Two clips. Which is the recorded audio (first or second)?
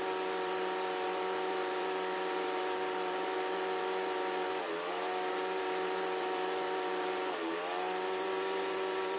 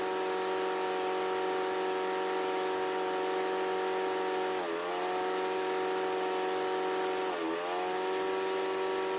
second